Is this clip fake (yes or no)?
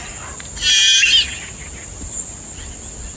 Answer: no